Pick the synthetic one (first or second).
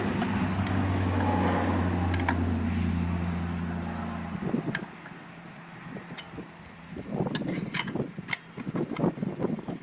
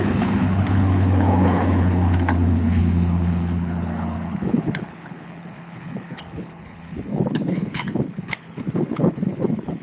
second